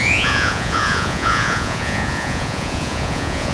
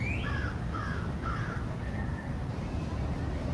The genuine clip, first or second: second